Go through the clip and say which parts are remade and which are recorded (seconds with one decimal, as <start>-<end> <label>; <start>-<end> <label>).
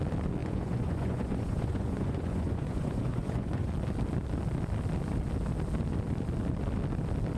0.0-0.4 recorded; 0.4-3.7 remade; 3.7-7.4 recorded